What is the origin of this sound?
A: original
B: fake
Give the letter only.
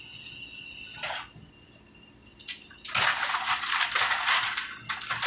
A